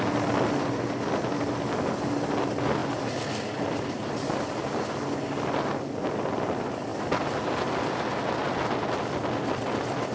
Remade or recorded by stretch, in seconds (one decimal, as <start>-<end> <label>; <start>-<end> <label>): 0.0-10.1 recorded